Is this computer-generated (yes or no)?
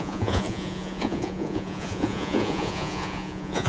yes